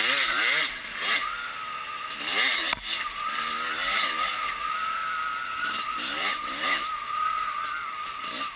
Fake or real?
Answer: real